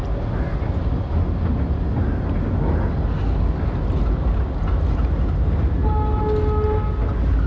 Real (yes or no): yes